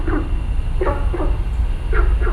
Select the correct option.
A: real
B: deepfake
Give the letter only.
A